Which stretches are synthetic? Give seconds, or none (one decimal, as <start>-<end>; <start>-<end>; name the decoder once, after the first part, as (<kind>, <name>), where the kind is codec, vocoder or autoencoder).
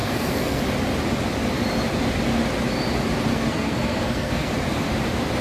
0.0-0.6 (codec, SNAC); 3.3-4.5